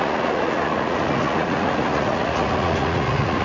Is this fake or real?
fake